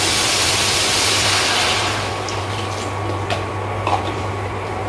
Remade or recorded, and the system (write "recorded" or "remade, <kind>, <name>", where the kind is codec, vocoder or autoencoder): recorded